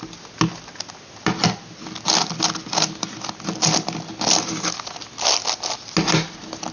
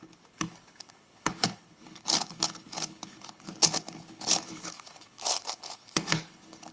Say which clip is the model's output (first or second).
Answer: second